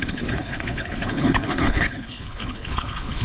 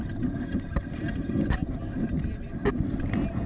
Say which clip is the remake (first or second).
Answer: first